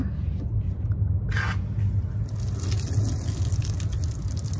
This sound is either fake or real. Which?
real